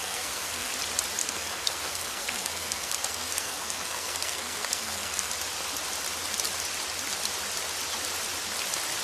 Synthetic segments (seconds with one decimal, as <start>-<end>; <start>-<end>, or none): 0.0-0.7; 1.2-5.3